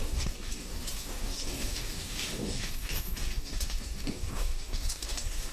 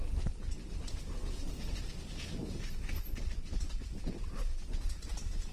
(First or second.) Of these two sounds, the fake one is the first